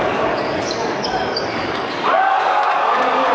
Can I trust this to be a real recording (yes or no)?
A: no